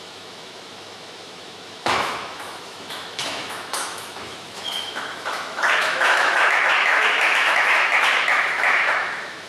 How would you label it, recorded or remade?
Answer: remade